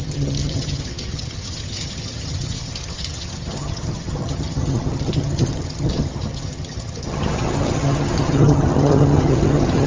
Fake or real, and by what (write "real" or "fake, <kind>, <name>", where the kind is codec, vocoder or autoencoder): fake, vocoder, HiFi-GAN